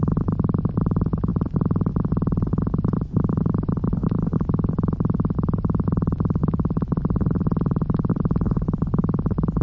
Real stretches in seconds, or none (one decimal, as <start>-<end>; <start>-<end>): 0.0-9.6